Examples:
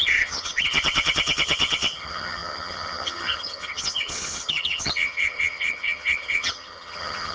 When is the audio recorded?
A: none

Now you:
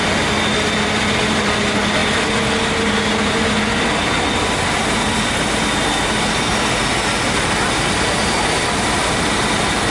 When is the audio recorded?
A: 0.0-9.9

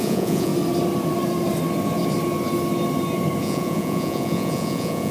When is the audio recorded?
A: 0.5-3.4